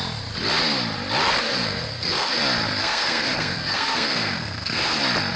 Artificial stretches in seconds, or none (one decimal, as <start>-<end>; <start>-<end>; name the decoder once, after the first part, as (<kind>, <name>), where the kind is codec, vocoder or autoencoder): 1.4-2.4 (codec, SNAC); 2.8-5.0